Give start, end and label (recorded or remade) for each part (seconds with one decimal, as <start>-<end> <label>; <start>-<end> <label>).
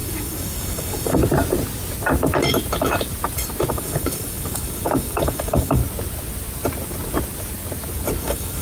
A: 0.0-1.2 remade; 1.2-3.7 recorded; 3.7-5.8 remade; 5.8-8.2 recorded; 8.2-8.6 remade